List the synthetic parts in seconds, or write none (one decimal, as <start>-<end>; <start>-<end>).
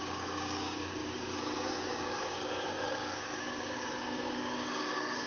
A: 0.0-5.3